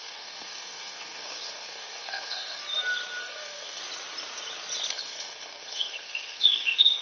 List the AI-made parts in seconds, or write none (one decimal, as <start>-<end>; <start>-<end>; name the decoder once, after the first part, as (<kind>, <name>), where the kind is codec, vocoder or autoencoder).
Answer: 0.0-2.6 (codec, SNAC); 3.2-3.8; 4.9-7.0